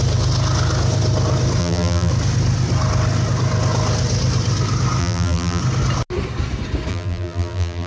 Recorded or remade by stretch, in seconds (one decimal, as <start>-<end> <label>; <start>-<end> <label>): 0.0-1.6 recorded; 1.6-2.1 remade; 2.1-5.0 recorded; 5.0-5.6 remade; 5.6-6.9 recorded; 6.9-7.9 remade